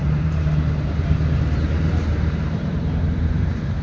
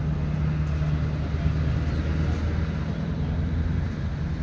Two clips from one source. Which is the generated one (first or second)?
first